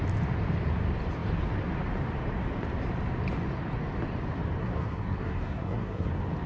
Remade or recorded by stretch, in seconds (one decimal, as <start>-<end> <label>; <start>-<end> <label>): 0.0-4.6 recorded; 4.6-6.1 remade; 6.1-6.5 recorded